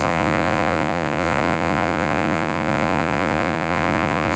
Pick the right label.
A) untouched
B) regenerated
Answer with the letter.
B